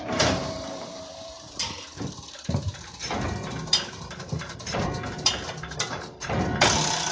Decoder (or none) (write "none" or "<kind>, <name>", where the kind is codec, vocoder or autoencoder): vocoder, BigVGAN v2